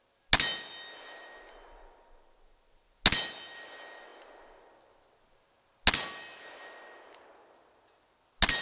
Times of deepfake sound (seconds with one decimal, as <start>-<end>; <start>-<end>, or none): none